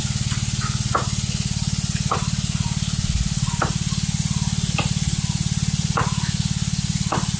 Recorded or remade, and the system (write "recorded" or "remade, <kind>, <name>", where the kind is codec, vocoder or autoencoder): recorded